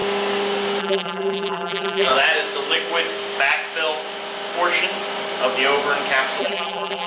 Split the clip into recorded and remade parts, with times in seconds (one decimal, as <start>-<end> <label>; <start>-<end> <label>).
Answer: 0.0-0.8 recorded; 0.8-2.1 remade; 2.1-6.4 recorded; 6.4-7.1 remade